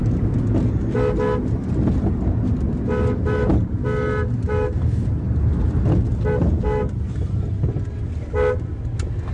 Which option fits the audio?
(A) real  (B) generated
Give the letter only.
A